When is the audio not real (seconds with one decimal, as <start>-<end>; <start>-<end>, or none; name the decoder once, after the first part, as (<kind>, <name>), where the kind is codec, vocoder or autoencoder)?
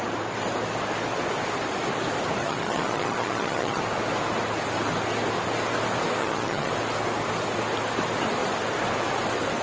2.4-3.8 (vocoder, HiFi-GAN); 6.2-6.7